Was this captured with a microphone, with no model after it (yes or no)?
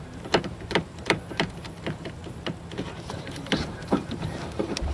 no